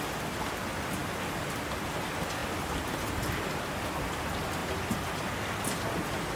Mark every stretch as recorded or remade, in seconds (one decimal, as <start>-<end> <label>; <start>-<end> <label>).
0.0-6.4 recorded